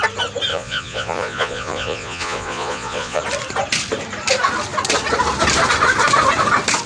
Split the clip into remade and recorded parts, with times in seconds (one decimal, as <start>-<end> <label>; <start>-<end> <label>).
0.0-0.5 recorded; 0.5-3.2 remade; 3.2-6.9 recorded